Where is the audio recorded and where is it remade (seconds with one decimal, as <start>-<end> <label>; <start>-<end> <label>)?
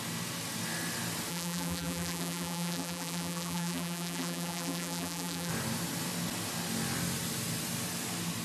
0.0-1.3 recorded; 1.3-5.5 remade; 5.5-8.4 recorded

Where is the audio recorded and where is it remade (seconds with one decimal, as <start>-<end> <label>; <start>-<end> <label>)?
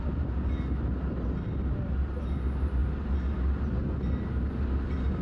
0.0-5.2 recorded